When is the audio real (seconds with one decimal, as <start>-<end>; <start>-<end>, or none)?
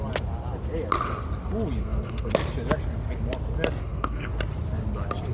0.0-1.8; 2.3-3.8; 4.3-5.3